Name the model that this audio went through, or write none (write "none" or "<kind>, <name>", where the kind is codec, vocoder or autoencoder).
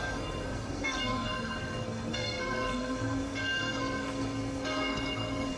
codec, SNAC